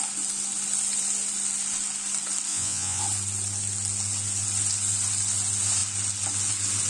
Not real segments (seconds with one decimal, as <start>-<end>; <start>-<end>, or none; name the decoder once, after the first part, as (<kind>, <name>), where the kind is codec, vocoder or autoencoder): 2.5-3.0 (vocoder, Vocos)